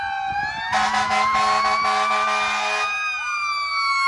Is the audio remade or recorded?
recorded